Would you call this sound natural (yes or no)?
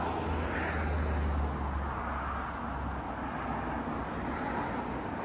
yes